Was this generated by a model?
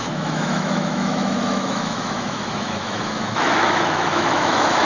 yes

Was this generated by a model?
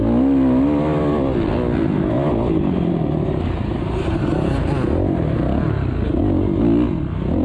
no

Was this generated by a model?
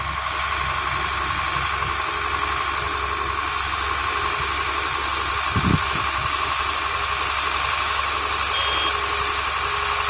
no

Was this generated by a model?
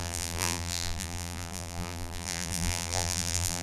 yes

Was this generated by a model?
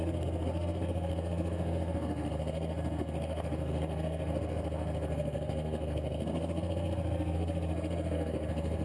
yes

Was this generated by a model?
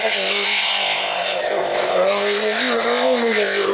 yes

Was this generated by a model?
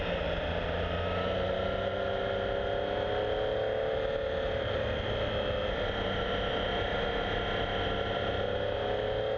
no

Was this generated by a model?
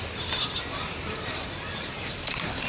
no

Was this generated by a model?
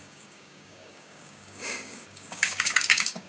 yes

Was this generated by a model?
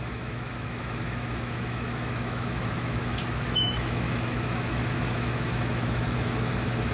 yes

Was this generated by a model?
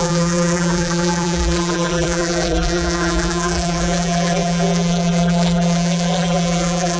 yes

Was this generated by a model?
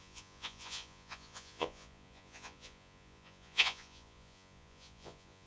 yes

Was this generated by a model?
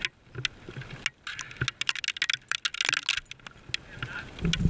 no